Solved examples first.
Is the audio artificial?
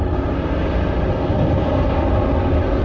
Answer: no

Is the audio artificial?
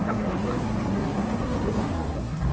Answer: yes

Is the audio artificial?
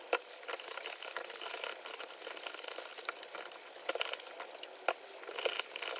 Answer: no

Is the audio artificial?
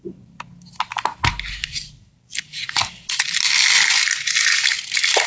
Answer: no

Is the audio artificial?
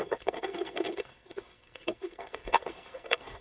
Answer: yes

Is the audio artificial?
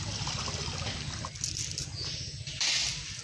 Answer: no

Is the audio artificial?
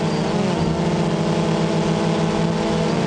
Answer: no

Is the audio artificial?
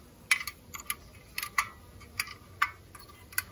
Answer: no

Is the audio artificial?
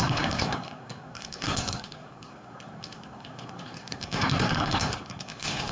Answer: yes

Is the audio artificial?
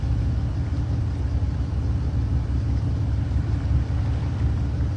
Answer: no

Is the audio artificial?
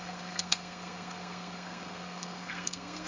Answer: yes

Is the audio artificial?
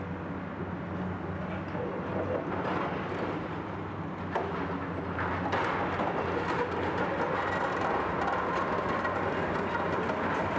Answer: no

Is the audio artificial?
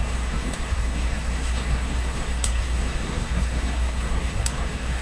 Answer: yes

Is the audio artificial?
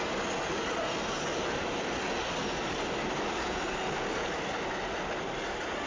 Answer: no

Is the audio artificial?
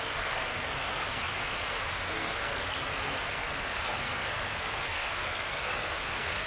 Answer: yes